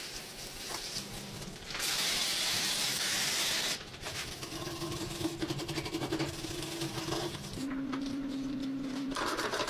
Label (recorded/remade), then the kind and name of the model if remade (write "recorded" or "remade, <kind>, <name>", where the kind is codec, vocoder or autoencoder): remade, vocoder, BigVGAN v2